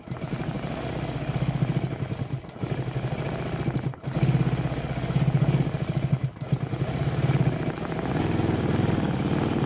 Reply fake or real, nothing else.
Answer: real